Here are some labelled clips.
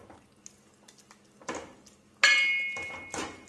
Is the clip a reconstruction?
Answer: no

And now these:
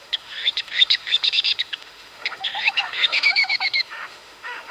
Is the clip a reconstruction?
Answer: yes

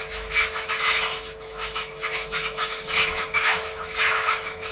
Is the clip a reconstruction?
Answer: yes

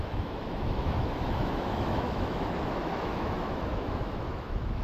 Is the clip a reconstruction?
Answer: yes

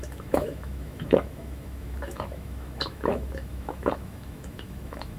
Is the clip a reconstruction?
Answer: yes